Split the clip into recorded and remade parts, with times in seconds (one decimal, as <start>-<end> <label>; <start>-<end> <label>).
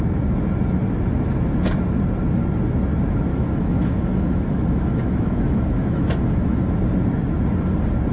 0.0-3.3 recorded; 3.3-6.7 remade; 6.7-8.1 recorded